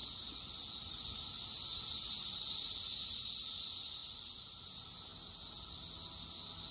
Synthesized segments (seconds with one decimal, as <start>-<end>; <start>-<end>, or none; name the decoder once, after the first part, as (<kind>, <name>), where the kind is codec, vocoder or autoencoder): none